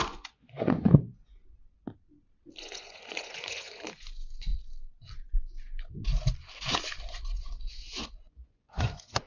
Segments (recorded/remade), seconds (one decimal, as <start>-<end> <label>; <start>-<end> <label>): 0.0-1.4 remade; 1.4-2.6 recorded; 2.6-4.5 remade; 4.5-5.3 recorded; 5.3-6.0 remade; 6.0-7.0 recorded; 7.0-9.3 remade